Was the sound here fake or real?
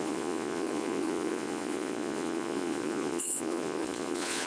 fake